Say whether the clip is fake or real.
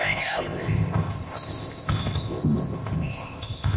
fake